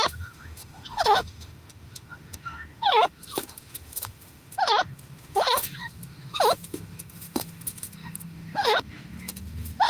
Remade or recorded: remade